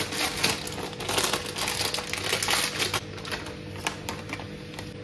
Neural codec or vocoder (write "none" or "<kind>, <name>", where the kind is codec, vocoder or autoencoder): none